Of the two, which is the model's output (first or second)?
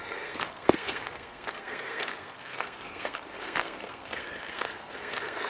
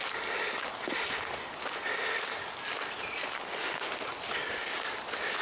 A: first